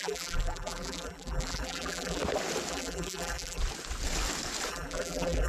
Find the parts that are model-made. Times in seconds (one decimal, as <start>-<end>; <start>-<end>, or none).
0.0-2.2; 2.7-3.6; 4.7-5.5